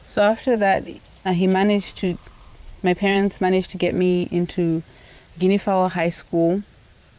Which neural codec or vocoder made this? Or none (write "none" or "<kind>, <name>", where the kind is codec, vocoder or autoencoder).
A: vocoder, Vocos